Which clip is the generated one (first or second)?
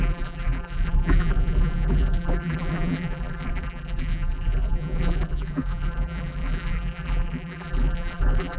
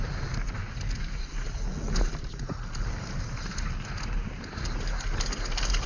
first